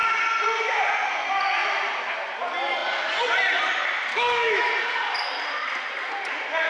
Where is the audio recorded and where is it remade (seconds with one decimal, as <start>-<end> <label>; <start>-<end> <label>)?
0.0-4.1 recorded; 4.1-4.7 remade; 4.7-6.7 recorded